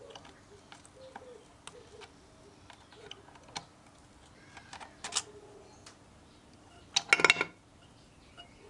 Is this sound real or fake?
real